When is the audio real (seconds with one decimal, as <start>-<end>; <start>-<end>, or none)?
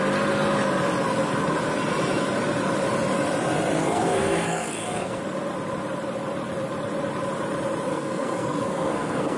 0.0-3.8; 5.2-7.9